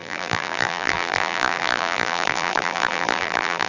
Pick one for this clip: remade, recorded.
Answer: remade